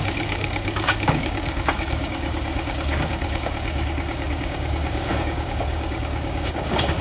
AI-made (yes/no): yes